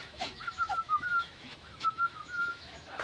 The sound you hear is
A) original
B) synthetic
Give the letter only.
B